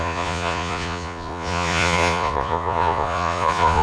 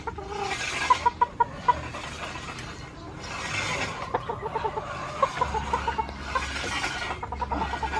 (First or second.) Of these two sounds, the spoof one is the first